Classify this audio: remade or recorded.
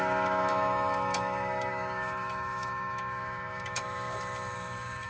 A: remade